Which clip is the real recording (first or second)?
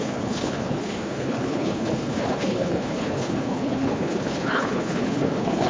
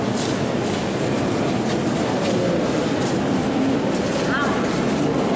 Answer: second